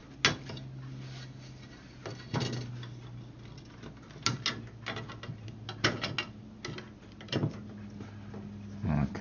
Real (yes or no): yes